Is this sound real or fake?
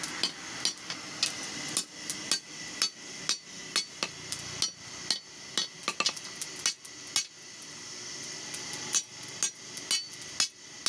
real